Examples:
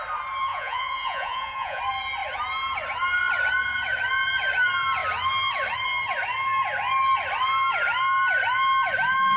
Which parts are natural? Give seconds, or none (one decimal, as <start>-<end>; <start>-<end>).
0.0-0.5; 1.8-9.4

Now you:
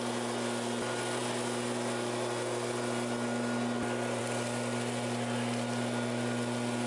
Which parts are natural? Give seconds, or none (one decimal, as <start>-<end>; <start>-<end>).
0.0-6.9

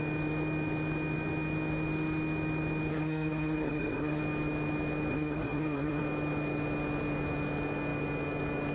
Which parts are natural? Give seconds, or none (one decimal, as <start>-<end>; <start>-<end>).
0.0-2.9; 4.2-5.1; 6.0-8.7